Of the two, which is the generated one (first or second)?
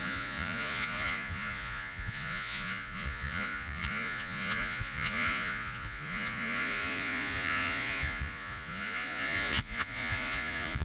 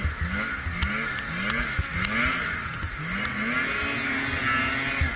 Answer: first